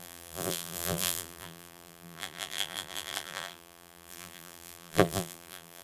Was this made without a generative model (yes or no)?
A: no